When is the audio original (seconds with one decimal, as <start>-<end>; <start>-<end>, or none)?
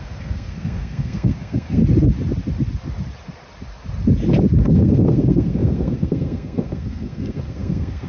1.8-4.6